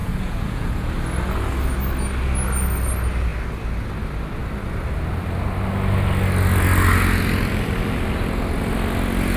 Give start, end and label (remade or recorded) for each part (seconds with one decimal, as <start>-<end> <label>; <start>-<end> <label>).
0.0-0.9 remade; 0.9-9.4 recorded